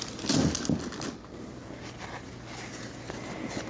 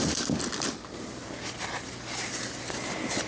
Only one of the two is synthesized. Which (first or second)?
second